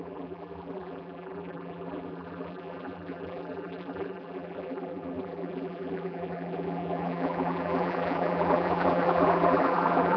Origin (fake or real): fake